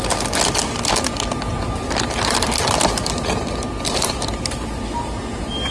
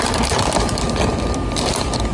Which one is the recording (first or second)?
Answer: first